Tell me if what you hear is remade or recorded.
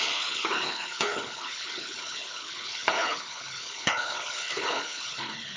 remade